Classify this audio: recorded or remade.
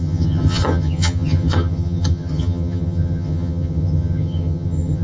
remade